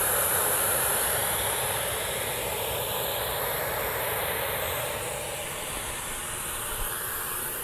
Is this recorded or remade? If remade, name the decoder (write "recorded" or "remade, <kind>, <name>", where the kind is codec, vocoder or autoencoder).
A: remade, vocoder, BigVGAN v2